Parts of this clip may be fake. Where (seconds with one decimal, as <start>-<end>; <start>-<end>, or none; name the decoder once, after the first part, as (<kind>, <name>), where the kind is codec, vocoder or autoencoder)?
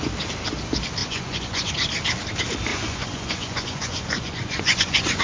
1.0-1.7 (vocoder, Vocos); 2.7-5.2